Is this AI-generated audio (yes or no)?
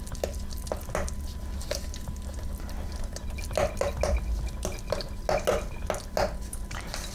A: no